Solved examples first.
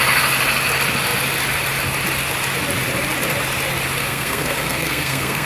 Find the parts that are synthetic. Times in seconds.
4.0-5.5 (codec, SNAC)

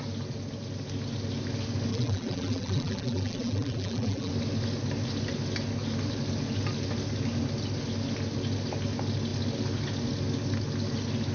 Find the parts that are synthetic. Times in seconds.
1.9-4.3 (vocoder, BigVGAN v2)

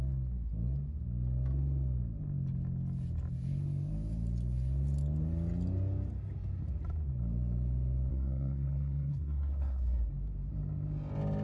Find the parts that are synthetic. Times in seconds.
8.1-10.1 (codec, SNAC)

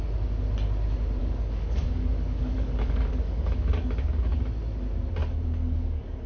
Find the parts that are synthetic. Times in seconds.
1.2-4.4 (codec, DAC); 5.2-6.3